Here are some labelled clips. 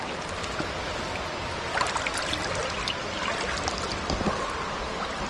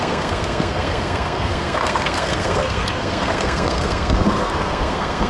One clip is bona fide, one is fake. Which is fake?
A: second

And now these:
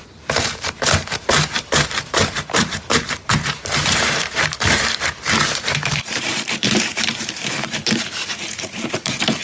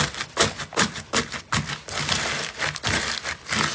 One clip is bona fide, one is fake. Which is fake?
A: first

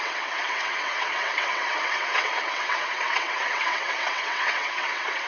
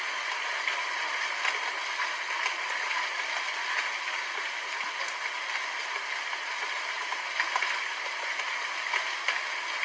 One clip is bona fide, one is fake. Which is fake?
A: first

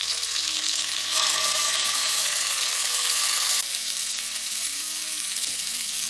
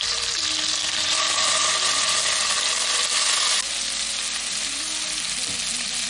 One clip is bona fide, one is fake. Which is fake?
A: first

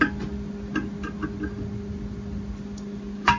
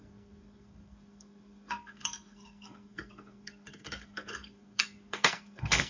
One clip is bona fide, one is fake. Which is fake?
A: second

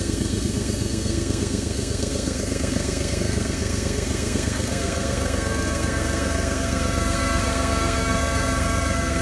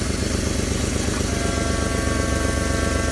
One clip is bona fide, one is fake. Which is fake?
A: first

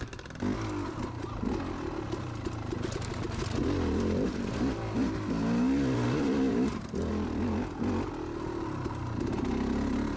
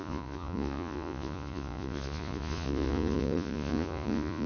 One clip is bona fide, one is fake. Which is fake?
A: second